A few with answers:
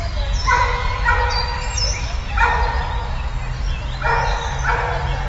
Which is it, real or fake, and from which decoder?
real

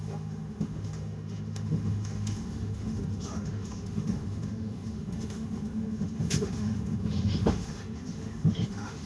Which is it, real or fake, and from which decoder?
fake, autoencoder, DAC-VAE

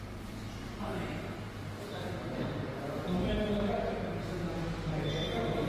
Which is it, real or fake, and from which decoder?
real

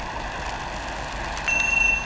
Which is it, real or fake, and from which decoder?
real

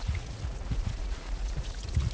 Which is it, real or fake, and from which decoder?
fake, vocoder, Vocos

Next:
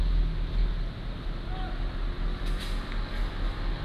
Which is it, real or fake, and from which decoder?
real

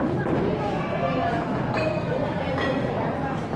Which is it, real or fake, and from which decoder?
real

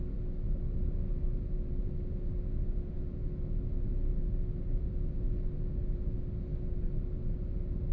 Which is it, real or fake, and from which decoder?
real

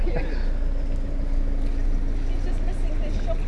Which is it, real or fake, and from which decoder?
real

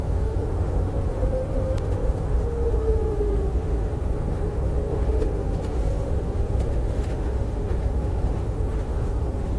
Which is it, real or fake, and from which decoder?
fake, autoencoder, DAC-VAE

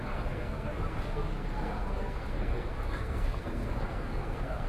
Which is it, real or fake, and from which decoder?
fake, codec, SNAC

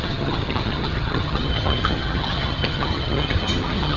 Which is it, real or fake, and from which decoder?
fake, vocoder, HiFi-GAN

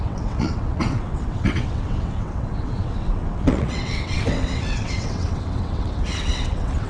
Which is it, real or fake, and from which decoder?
fake, vocoder, WaveNeXt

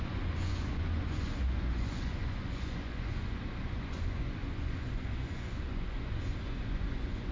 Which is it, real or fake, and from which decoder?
fake, vocoder, Vocos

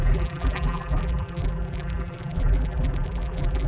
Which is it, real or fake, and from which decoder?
fake, vocoder, BigVGAN v2